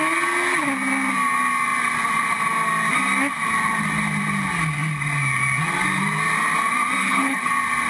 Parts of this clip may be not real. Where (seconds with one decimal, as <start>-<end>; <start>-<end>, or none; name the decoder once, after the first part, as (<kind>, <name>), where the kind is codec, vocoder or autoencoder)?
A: 7.0-7.5 (codec, HILCodec)